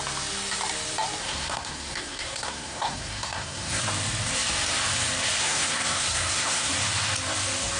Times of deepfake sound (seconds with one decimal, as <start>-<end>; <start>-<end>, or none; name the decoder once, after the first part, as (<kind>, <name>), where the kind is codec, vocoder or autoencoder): 1.2-3.8 (codec, SNAC); 5.4-6.7